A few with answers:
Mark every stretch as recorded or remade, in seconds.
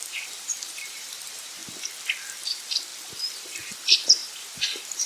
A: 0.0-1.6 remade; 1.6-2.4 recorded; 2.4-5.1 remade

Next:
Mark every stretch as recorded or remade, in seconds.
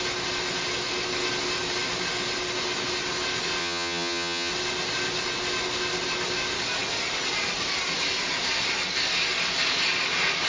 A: 0.0-3.6 recorded; 3.6-4.5 remade; 4.5-10.5 recorded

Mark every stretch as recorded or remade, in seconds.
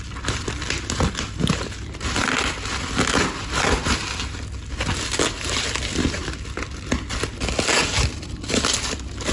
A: 0.0-9.3 recorded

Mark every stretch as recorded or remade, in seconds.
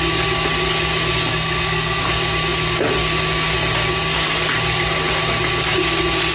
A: 0.0-1.3 recorded; 1.3-2.0 remade; 2.0-6.3 recorded